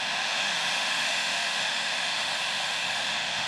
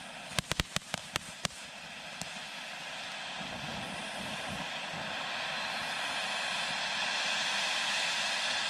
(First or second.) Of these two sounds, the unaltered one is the second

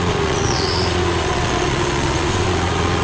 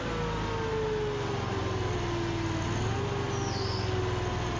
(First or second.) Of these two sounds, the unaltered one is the second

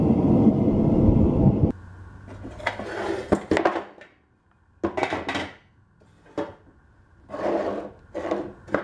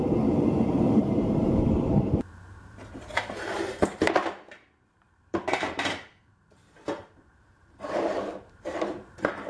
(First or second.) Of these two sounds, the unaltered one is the first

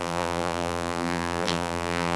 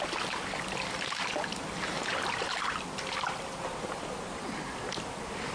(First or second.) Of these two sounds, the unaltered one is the second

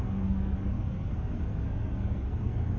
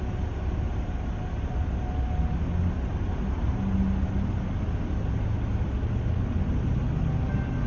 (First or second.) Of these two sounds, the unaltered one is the second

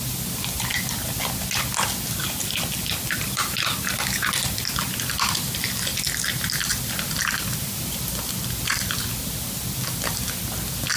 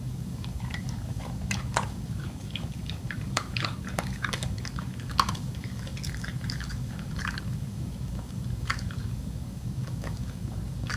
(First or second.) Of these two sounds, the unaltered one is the first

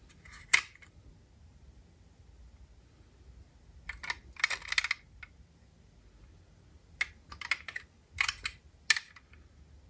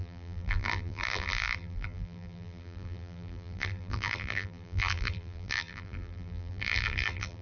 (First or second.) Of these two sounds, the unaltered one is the first